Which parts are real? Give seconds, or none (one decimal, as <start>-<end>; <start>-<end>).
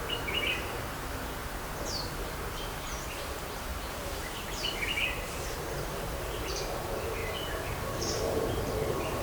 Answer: none